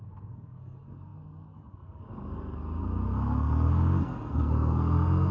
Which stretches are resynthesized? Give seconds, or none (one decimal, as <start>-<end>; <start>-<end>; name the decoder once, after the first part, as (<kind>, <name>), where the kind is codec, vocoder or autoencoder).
0.0-5.3 (codec, SNAC)